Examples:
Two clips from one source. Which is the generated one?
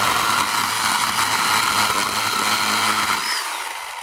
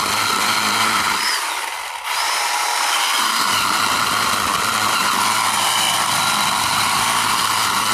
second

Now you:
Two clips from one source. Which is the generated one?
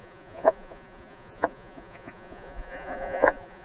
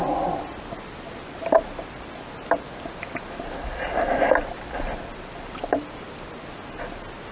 first